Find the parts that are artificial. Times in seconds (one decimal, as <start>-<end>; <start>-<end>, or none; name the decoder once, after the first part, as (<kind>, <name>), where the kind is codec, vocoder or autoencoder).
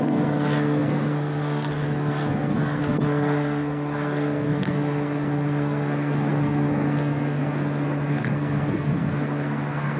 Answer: 0.0-10.0 (codec, SNAC)